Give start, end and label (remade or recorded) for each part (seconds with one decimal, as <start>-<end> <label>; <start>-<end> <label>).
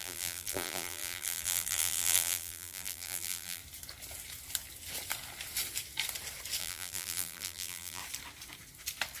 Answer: 0.0-3.6 remade; 3.6-6.6 recorded; 6.6-8.0 remade; 8.0-9.2 recorded